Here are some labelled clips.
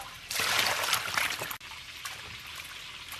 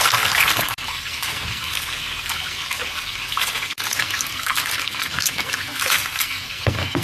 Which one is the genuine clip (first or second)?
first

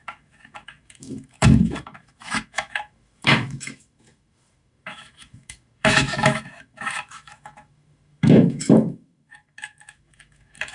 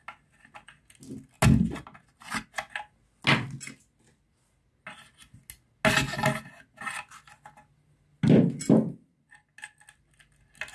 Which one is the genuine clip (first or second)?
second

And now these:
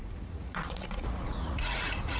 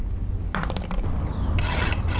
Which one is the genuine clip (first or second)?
second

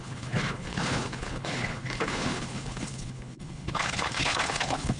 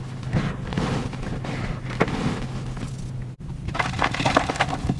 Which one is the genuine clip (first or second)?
second